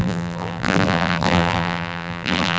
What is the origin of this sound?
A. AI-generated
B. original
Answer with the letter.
A